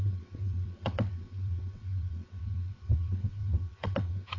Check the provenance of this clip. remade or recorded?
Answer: remade